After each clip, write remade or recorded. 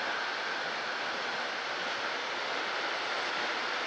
recorded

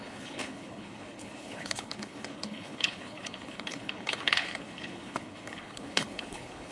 remade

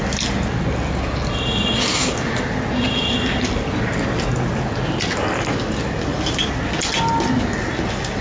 recorded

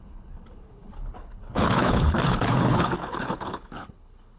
remade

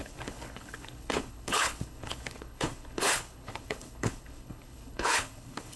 remade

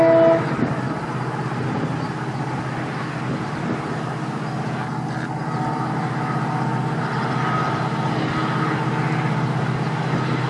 recorded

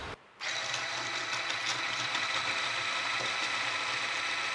recorded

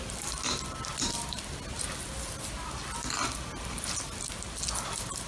recorded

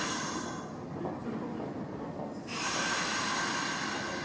recorded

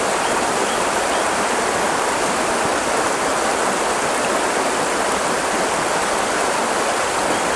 recorded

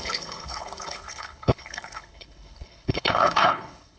remade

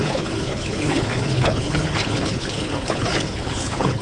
remade